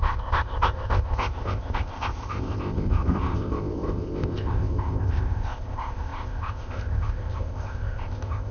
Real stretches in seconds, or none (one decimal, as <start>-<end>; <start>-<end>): none